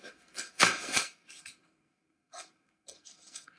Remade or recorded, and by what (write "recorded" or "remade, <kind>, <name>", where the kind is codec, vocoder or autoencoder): remade, codec, SNAC